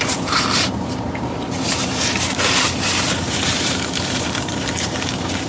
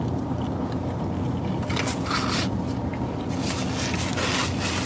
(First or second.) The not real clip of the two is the first